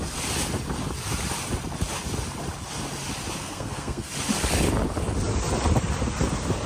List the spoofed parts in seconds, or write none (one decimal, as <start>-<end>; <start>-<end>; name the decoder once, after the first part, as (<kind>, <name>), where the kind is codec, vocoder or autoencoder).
3.4-4.1 (codec, SNAC)